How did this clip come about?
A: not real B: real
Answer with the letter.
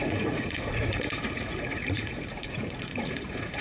A